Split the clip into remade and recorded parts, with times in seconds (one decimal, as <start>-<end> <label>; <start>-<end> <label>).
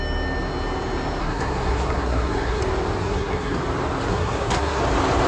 0.0-1.2 recorded; 1.2-2.6 remade; 2.6-3.0 recorded; 3.0-3.6 remade; 3.6-4.1 recorded; 4.1-4.8 remade; 4.8-5.3 recorded